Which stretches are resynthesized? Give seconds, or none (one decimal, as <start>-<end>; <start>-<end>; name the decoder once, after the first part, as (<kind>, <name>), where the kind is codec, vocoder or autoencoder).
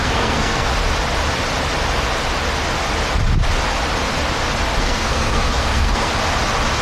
0.0-0.7 (codec, SNAC); 4.8-6.1